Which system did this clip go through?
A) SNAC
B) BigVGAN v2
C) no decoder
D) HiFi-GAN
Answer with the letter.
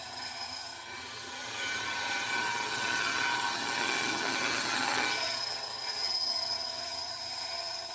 D